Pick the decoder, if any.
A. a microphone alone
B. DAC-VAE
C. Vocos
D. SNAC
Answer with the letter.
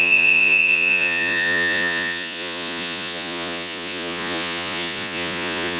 C